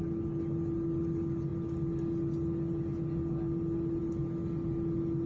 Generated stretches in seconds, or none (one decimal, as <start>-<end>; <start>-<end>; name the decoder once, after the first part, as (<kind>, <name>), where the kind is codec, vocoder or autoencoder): none